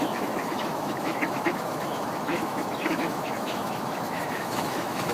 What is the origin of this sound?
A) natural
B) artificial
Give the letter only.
B